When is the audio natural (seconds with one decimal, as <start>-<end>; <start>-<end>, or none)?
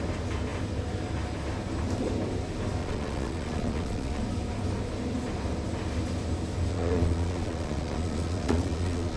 0.0-2.8; 4.2-6.7